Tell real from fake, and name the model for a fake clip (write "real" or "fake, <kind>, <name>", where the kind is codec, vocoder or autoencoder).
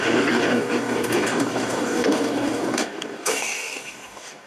fake, codec, DAC